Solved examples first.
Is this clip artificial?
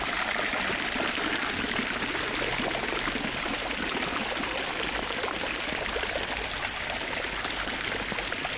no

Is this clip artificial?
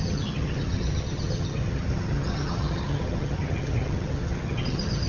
yes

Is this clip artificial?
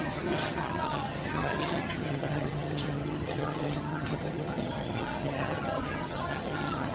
yes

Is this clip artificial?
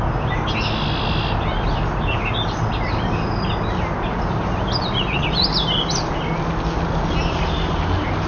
no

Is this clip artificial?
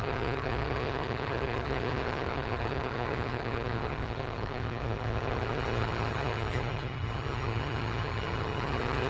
yes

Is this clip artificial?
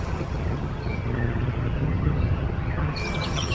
yes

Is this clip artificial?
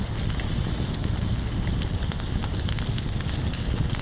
no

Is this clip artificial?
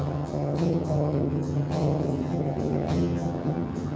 yes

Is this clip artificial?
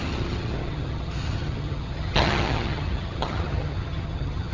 yes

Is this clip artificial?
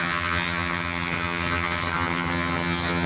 yes